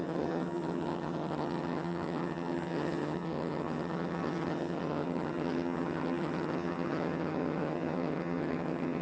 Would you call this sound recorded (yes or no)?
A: no